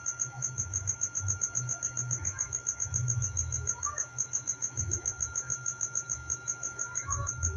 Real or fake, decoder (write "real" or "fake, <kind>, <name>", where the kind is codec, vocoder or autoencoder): fake, autoencoder, DAC-VAE